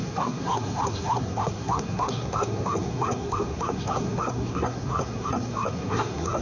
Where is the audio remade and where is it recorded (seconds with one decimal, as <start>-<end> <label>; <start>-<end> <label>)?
0.0-6.4 remade